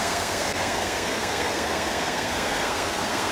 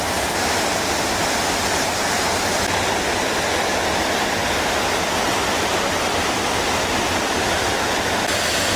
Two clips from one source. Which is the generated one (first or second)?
first